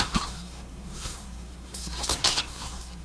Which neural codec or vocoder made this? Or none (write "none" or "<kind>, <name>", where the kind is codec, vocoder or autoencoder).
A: codec, SNAC